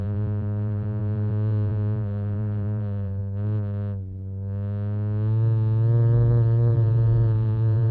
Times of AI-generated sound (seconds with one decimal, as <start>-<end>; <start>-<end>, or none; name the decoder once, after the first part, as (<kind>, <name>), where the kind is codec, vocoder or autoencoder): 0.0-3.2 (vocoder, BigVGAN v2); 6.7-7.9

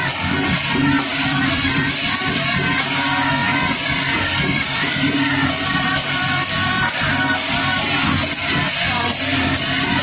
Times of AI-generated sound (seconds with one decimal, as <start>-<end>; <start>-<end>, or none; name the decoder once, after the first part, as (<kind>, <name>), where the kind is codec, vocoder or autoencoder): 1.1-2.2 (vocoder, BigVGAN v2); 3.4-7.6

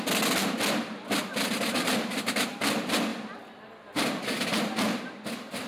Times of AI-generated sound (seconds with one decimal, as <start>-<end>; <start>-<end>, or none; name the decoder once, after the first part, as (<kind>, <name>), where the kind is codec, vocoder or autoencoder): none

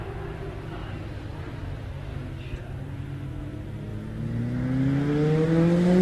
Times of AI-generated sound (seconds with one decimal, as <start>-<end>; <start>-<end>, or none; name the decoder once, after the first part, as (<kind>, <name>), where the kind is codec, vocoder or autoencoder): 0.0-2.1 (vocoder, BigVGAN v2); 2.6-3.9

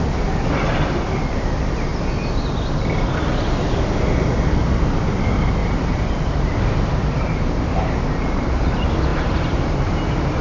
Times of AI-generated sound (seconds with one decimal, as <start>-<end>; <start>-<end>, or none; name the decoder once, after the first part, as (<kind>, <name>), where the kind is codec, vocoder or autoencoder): 5.6-8.7 (vocoder, BigVGAN v2); 9.1-10.4

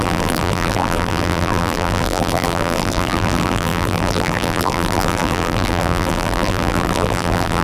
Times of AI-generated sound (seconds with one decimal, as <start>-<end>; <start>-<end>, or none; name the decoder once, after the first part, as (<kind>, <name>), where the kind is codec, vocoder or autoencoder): 0.0-7.6 (vocoder, BigVGAN v2)

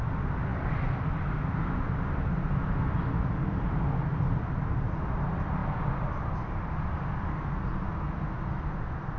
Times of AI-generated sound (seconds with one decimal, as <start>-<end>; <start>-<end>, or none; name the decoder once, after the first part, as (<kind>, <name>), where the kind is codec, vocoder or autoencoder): 5.6-7.1 (vocoder, BigVGAN v2)